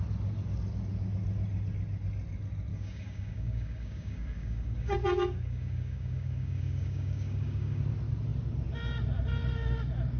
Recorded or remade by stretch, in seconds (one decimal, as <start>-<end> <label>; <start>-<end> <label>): 0.0-2.7 recorded; 2.7-7.8 remade; 7.8-10.2 recorded